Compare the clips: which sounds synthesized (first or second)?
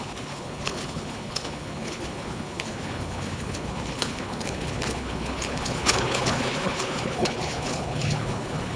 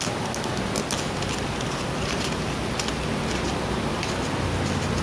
first